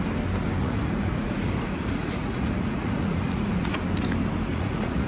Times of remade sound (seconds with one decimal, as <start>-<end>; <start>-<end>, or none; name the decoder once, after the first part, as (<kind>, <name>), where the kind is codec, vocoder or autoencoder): 0.6-3.7 (vocoder, Vocos); 4.5-5.1